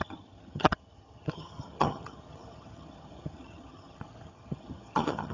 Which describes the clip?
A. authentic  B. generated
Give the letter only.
B